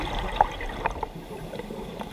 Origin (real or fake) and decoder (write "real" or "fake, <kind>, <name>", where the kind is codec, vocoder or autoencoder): fake, vocoder, BigVGAN v2